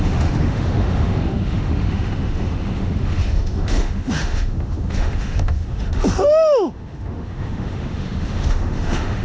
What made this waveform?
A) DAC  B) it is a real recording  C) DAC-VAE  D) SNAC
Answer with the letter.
C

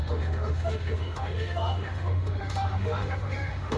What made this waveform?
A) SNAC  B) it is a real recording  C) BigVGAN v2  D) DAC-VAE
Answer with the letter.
D